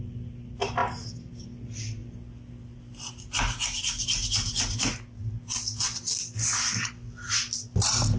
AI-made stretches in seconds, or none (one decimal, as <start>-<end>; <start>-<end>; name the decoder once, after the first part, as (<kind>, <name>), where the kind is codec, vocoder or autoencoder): none